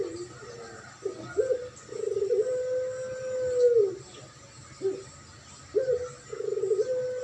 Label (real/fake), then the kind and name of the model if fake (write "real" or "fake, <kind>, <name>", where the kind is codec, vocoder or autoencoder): real